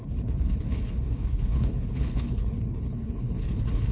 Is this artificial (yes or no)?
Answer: yes